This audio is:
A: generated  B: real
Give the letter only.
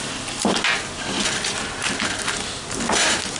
B